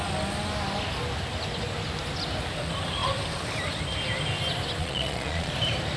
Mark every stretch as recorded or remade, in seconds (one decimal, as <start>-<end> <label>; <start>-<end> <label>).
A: 0.0-4.8 recorded; 4.8-5.5 remade; 5.5-6.0 recorded